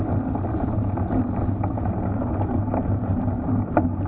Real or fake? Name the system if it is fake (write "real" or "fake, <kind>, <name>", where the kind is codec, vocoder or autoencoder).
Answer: real